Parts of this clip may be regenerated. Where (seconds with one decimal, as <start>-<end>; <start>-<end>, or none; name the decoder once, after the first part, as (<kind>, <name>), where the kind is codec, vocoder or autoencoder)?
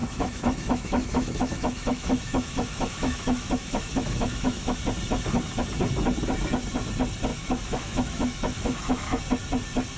0.0-4.8 (autoencoder, DAC-VAE); 7.3-9.2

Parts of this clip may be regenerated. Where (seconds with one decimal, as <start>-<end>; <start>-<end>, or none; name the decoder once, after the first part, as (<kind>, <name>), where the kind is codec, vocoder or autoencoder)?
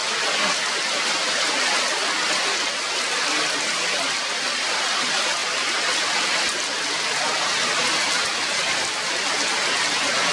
none